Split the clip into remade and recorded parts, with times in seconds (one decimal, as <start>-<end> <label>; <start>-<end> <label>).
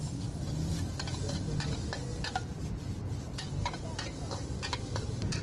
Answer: 0.0-0.7 recorded; 0.7-1.2 remade; 1.2-2.1 recorded; 2.1-3.8 remade; 3.8-5.4 recorded